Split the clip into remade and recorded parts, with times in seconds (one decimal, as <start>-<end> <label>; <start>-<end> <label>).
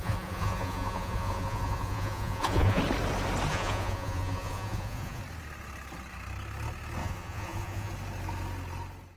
0.0-2.8 remade; 2.8-3.5 recorded; 3.5-5.2 remade; 5.2-7.0 recorded; 7.0-7.9 remade; 7.9-9.2 recorded